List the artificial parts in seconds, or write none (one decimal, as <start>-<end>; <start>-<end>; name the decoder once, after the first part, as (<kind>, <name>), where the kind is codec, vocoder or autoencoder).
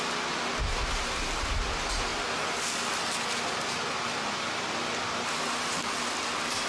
none